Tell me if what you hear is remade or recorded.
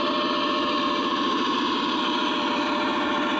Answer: remade